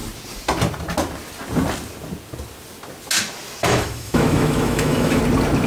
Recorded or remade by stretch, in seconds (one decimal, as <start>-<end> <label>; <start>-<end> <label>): 0.0-3.6 recorded; 3.6-5.2 remade; 5.2-5.7 recorded